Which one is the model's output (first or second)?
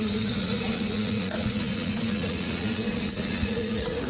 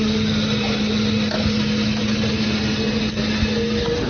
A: first